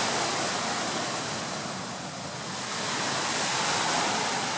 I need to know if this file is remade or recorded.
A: recorded